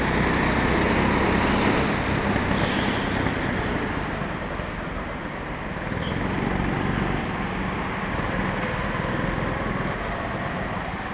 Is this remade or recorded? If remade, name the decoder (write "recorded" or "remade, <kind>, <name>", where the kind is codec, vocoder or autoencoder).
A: recorded